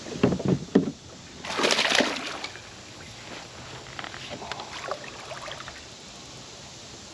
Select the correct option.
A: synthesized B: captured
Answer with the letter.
B